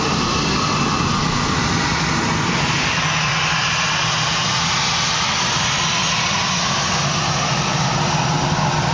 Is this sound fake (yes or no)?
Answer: no